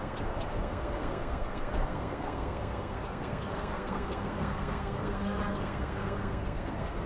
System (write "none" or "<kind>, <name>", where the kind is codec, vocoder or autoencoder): codec, SNAC